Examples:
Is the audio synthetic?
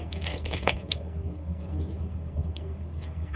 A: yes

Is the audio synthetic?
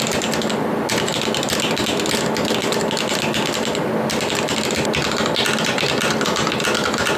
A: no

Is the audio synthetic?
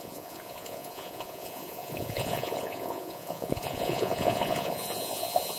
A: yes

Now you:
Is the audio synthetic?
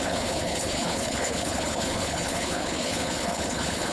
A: yes